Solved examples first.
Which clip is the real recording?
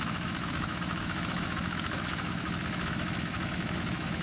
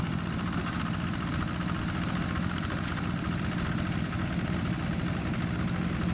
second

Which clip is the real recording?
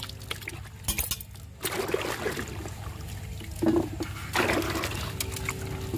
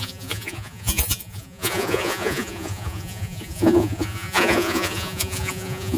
first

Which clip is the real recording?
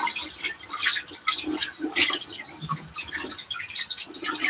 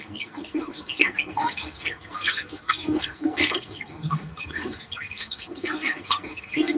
first